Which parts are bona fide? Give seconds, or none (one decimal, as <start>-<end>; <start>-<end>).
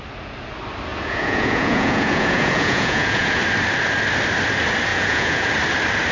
0.0-0.9; 3.4-4.9; 5.5-6.1